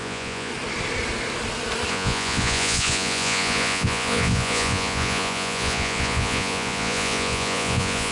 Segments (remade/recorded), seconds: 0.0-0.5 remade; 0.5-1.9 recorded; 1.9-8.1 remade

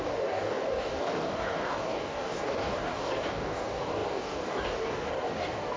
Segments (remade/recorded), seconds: 0.0-5.8 remade

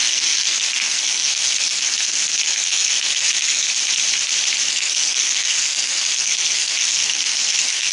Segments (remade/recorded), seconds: 0.0-3.7 remade; 3.7-4.7 recorded; 4.7-7.9 remade

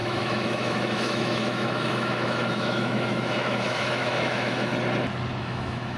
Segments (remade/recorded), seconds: 0.0-4.7 remade; 4.7-5.4 recorded; 5.4-6.0 remade